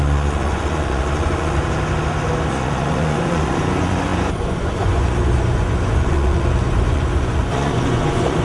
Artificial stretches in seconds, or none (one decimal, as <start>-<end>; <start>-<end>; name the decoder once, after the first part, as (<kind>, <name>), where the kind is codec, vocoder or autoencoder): 0.0-1.6 (vocoder, Vocos); 2.5-8.4